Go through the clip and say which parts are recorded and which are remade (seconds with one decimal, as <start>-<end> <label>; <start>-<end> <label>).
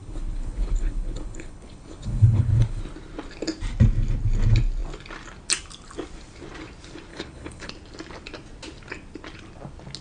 0.0-2.8 remade; 2.8-7.1 recorded; 7.1-7.7 remade; 7.7-10.0 recorded